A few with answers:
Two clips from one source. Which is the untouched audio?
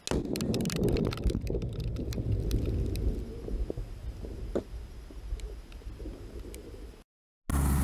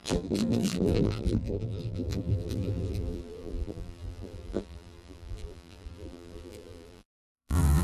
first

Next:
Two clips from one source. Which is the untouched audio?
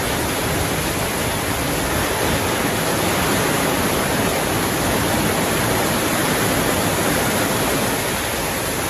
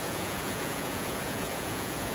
first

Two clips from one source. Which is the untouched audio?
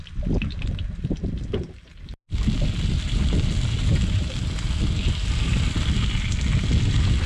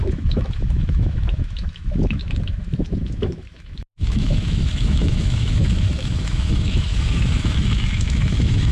first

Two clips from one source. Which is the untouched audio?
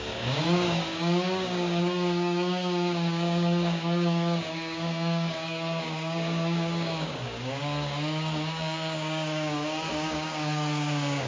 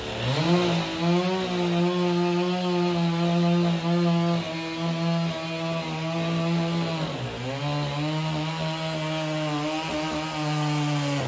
second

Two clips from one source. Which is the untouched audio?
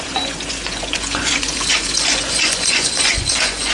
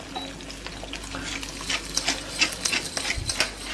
second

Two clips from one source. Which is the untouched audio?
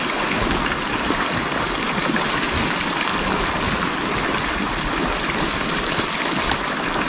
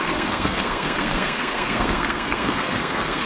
first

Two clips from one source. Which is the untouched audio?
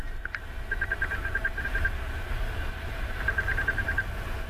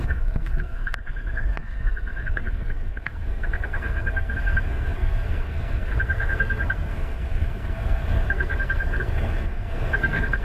first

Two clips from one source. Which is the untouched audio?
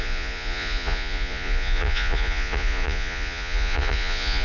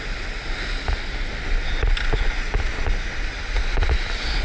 second